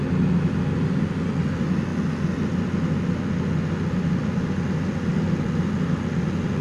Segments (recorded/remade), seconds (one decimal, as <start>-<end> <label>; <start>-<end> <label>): 0.0-6.6 recorded